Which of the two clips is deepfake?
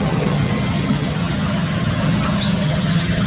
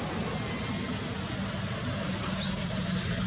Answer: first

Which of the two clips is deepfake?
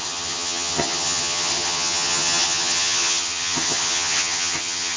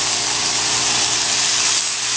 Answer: first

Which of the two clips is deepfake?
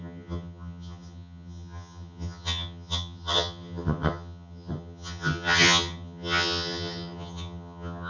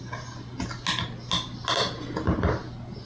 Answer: first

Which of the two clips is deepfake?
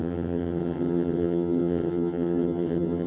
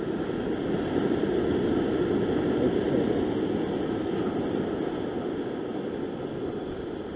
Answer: first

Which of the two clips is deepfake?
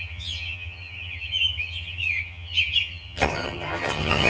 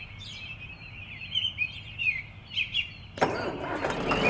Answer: first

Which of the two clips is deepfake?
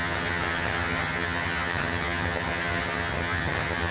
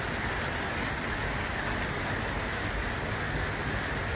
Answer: first